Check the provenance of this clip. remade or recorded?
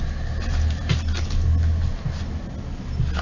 recorded